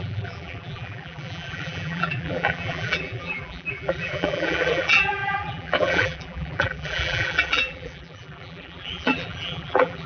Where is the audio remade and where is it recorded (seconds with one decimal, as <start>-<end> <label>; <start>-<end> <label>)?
0.0-10.1 remade